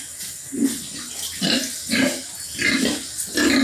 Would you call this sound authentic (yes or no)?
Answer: yes